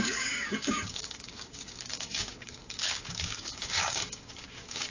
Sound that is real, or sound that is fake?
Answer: fake